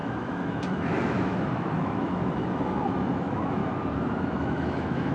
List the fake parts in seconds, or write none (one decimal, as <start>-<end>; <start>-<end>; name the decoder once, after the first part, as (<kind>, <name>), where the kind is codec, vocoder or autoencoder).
0.0-3.6 (autoencoder, DAC-VAE); 4.3-5.1

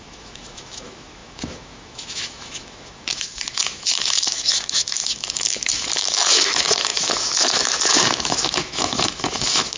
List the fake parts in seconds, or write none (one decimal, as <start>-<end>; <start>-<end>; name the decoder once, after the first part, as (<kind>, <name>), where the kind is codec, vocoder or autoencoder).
0.0-9.8 (autoencoder, DAC-VAE)

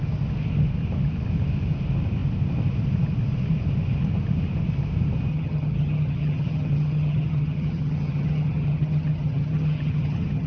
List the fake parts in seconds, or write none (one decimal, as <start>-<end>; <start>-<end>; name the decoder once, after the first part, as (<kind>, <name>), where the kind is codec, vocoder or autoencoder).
5.3-10.5 (vocoder, HiFi-GAN)

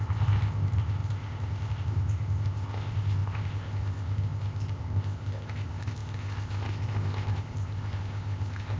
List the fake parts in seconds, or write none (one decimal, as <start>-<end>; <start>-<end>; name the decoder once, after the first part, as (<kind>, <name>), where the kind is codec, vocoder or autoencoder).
0.0-8.8 (codec, ZipCodec)

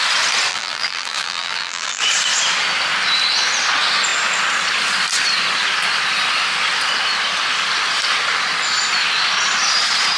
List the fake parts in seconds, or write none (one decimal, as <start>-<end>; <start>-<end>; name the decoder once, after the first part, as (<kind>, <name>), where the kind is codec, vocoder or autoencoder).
0.5-2.0 (vocoder, BigVGAN v2)

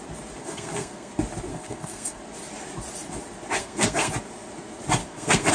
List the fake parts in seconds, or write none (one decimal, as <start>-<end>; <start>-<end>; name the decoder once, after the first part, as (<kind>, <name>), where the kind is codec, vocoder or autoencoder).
0.4-1.1 (codec, SNAC); 1.5-2.2; 3.6-4.1; 5.0-5.5

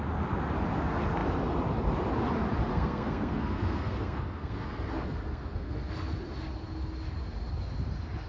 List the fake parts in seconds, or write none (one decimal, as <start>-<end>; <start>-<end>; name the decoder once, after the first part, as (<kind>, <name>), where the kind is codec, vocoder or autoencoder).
2.7-5.9 (codec, SNAC)

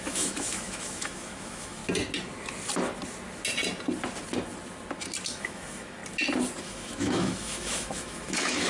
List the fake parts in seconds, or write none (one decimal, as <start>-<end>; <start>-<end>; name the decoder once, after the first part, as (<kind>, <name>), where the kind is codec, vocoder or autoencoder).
0.0-1.8 (autoencoder, DAC-VAE); 5.4-6.0; 6.6-8.7